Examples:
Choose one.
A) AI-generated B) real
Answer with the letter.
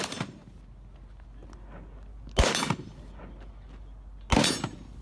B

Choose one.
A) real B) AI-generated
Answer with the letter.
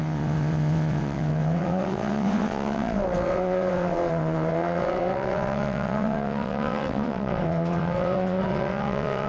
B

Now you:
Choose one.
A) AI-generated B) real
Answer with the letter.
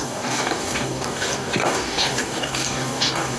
A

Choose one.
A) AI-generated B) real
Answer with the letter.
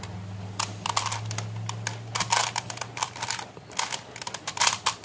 B